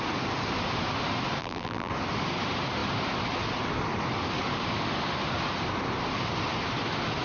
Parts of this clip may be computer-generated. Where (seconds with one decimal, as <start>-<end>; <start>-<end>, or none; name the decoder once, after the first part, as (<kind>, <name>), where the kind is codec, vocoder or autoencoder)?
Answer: 1.4-1.9 (vocoder, BigVGAN v2)